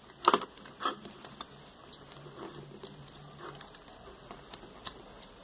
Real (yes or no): yes